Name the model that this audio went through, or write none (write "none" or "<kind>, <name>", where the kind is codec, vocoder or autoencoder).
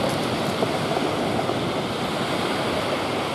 none